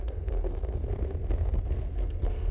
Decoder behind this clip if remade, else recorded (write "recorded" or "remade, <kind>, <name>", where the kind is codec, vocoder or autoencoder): remade, codec, SNAC